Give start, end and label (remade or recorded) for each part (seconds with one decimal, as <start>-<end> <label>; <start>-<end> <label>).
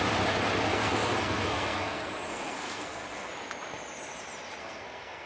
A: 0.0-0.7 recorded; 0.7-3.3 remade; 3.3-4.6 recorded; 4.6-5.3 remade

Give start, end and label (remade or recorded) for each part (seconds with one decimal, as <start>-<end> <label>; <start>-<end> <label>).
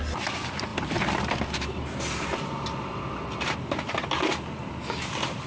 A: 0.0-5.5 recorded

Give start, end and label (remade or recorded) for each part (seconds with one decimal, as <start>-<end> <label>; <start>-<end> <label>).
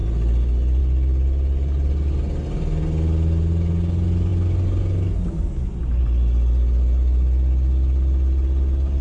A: 0.0-9.0 recorded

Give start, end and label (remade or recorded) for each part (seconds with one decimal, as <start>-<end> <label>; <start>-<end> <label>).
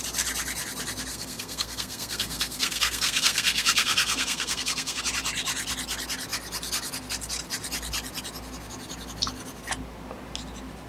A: 0.0-1.1 recorded; 1.1-5.0 remade; 5.0-10.9 recorded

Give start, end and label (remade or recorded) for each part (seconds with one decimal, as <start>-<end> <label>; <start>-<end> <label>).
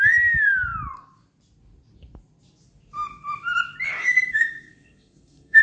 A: 0.0-4.0 recorded; 4.0-5.6 remade